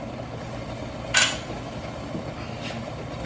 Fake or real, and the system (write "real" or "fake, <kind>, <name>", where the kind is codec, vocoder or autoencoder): real